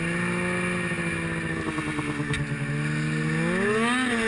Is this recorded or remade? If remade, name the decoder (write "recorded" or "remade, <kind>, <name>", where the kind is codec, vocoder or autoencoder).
recorded